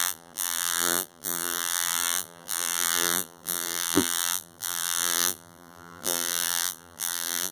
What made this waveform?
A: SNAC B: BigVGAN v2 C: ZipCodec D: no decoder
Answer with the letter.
B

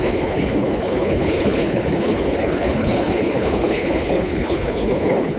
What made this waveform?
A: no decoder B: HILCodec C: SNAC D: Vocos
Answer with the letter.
B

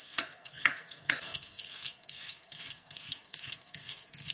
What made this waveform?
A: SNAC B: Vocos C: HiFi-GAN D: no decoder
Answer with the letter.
A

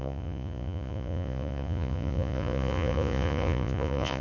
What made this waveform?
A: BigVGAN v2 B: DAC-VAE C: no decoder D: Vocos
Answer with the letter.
D